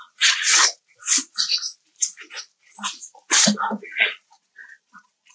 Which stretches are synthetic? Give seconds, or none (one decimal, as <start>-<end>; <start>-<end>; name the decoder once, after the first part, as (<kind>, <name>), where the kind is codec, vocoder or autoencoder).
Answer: 0.0-0.6 (vocoder, Vocos); 3.8-5.3